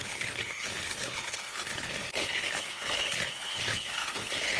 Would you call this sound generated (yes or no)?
yes